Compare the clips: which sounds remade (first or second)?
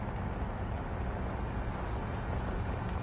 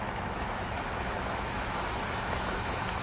second